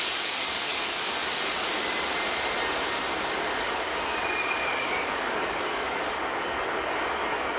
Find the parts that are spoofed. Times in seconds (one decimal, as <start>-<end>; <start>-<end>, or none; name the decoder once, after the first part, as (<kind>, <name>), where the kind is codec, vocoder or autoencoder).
0.0-1.2 (codec, DAC); 3.6-7.6